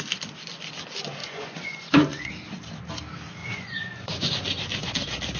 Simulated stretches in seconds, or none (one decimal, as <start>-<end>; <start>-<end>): 1.2-2.3; 3.4-4.3